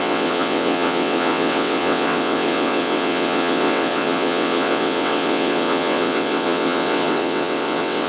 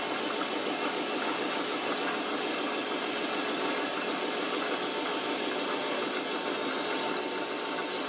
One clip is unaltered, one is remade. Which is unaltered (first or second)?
second